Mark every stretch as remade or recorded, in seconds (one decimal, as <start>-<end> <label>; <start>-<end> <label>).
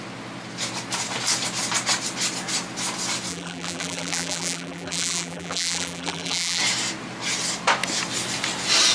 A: 0.0-3.3 recorded; 3.3-6.6 remade; 6.6-8.9 recorded